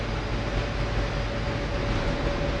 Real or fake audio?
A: real